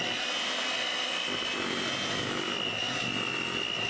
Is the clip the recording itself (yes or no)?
yes